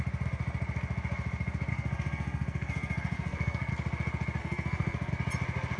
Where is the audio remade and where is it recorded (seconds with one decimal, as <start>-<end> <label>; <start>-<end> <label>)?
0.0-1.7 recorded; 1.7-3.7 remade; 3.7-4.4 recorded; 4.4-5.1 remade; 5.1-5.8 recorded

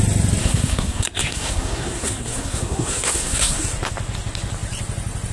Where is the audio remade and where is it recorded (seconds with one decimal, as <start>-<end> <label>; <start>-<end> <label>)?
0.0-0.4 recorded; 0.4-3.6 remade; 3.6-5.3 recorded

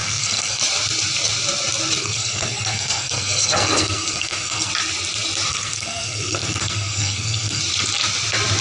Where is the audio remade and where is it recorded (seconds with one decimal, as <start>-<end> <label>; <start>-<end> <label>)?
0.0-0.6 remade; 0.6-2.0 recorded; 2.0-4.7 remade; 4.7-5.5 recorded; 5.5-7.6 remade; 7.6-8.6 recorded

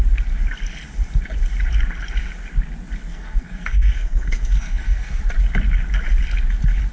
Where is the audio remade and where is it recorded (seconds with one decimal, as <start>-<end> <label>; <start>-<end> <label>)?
0.0-3.1 recorded; 3.1-5.2 remade; 5.2-6.9 recorded

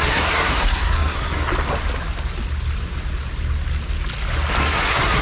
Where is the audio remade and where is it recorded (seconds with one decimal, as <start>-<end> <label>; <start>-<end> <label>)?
0.0-1.5 remade; 1.5-4.6 recorded; 4.6-5.2 remade

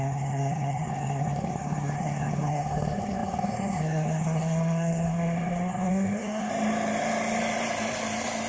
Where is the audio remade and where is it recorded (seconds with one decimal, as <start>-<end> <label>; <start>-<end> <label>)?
0.0-6.5 remade; 6.5-8.5 recorded

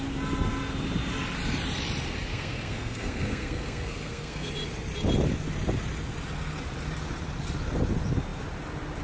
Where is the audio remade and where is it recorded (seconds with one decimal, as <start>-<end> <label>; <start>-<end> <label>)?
0.0-2.3 recorded; 2.3-4.5 remade; 4.5-9.0 recorded

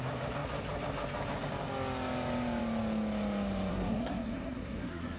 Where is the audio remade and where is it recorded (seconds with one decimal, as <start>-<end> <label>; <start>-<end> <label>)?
0.0-3.7 recorded; 3.7-5.2 remade